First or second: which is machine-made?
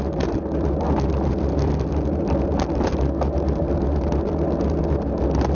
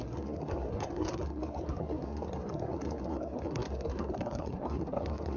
second